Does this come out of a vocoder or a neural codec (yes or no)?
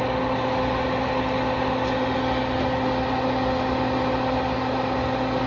no